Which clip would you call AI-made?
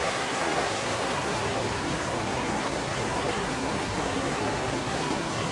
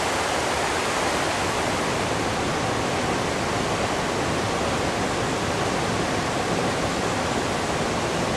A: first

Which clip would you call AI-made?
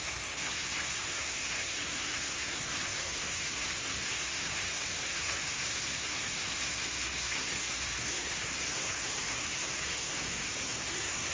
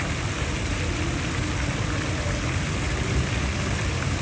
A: first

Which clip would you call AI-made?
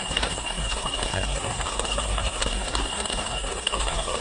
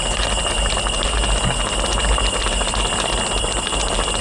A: first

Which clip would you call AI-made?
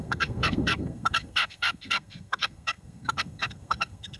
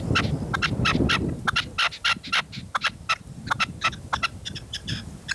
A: first